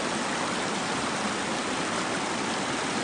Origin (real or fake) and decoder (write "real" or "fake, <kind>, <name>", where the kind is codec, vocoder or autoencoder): real